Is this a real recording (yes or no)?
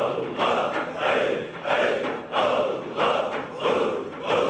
no